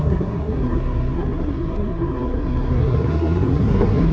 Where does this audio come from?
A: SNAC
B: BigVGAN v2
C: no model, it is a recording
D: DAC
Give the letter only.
A